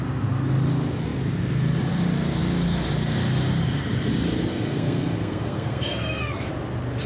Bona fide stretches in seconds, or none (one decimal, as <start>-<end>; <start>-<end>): 0.0-4.5; 6.5-7.1